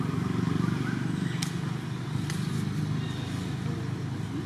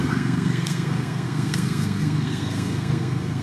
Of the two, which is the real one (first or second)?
first